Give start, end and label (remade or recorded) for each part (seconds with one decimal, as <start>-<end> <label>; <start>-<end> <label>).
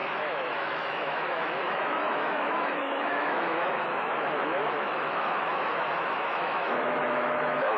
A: 0.0-7.8 remade